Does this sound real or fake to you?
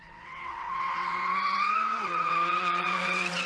fake